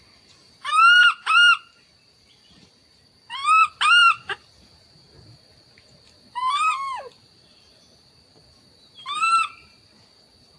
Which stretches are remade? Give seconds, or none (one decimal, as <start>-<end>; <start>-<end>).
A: 0.0-10.6